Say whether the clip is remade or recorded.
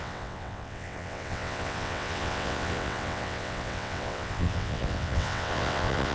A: remade